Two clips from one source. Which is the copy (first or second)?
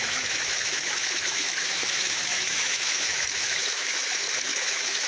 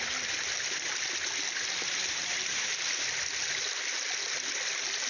first